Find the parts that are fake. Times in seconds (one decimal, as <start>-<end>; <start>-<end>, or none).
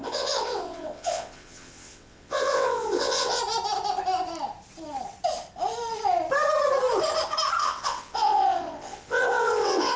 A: 0.0-3.4; 7.6-10.0